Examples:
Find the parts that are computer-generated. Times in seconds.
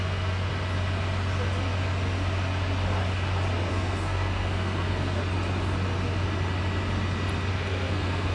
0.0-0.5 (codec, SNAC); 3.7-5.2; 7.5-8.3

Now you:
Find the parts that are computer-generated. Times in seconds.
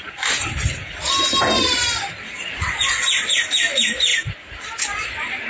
none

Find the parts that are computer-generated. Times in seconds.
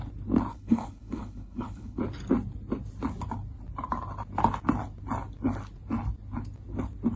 0.5-2.0 (codec, HILCodec)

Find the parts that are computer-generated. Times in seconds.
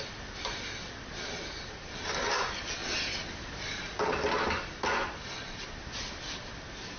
none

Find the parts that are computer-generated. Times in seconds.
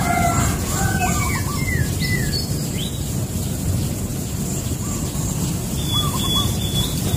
none